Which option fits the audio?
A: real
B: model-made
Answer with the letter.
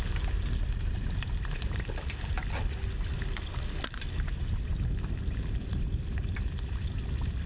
A